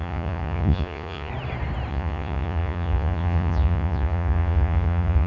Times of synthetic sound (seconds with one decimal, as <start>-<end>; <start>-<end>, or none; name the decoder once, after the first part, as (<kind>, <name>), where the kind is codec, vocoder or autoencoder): 0.0-1.3 (vocoder, Vocos); 1.9-5.3